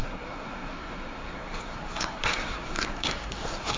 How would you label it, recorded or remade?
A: remade